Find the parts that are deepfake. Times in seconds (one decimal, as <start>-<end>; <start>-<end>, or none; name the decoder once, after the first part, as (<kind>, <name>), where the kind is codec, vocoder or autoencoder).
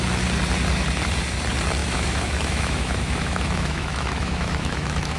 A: 1.8-5.2 (autoencoder, DAC-VAE)